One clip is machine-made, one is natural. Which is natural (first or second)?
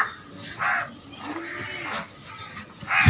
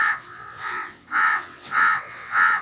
first